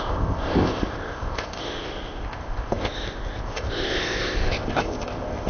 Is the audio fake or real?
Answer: fake